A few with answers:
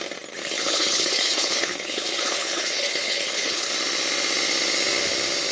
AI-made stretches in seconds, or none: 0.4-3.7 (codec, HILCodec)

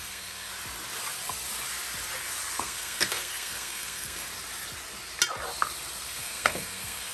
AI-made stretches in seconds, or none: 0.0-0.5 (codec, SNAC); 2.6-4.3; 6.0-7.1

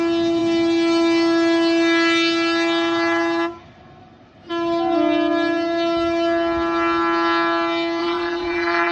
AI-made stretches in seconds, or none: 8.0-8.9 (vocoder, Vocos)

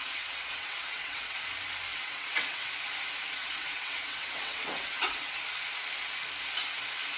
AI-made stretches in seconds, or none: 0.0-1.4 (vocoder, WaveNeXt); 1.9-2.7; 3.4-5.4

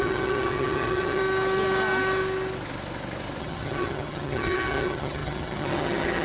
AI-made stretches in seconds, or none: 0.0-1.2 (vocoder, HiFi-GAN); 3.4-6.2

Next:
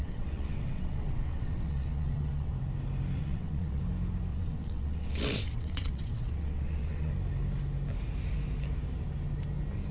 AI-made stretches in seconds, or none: 0.0-2.5 (vocoder, WaveNeXt); 3.2-3.8; 4.3-7.1

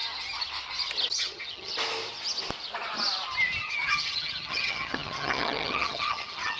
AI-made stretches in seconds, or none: 1.1-1.7 (vocoder, HiFi-GAN); 3.6-6.6

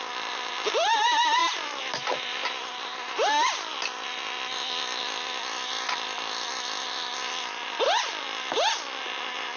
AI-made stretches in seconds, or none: 1.4-3.1 (vocoder, BigVGAN v2)